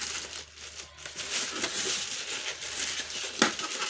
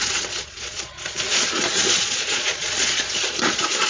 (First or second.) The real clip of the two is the first